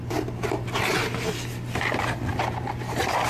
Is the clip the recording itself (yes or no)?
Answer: yes